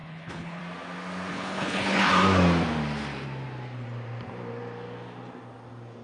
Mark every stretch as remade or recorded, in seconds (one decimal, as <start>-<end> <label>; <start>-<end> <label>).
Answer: 0.0-0.6 remade; 0.6-1.3 recorded; 1.3-2.1 remade; 2.1-6.0 recorded